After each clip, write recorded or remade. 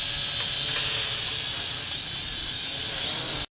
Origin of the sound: recorded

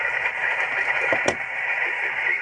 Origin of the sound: remade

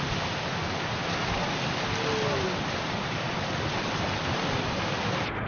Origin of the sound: recorded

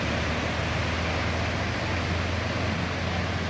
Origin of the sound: recorded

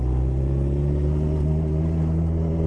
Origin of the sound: recorded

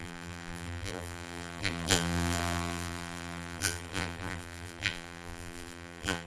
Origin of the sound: remade